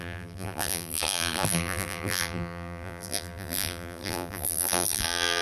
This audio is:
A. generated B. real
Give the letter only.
A